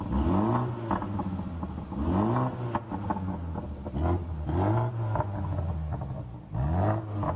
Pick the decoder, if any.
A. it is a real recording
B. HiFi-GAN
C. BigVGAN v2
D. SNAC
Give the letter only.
A